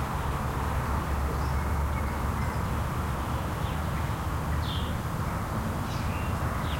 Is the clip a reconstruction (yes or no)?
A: no